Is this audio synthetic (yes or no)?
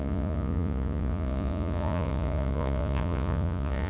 yes